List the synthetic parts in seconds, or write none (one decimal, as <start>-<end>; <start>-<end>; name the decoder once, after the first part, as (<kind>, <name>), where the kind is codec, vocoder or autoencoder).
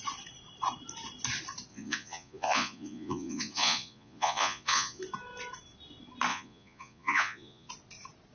1.7-5.0 (vocoder, Vocos); 6.3-7.7